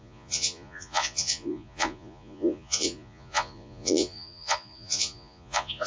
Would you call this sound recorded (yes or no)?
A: no